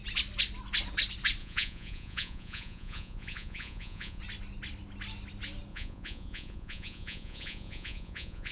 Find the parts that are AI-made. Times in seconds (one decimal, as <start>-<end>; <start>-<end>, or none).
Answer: 1.4-4.2; 5.7-8.5